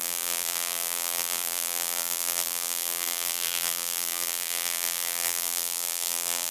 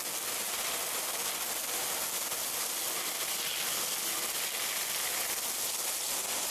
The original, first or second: second